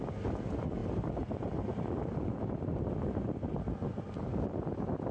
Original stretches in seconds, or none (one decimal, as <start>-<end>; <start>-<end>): 0.0-5.1